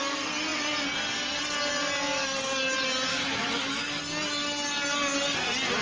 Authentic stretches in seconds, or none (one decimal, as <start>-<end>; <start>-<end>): 0.0-3.1; 4.0-5.8